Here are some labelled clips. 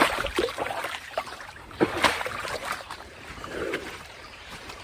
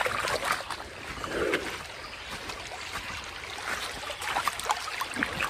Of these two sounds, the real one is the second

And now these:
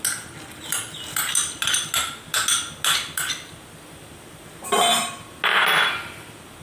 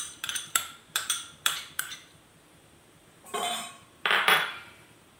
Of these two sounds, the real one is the first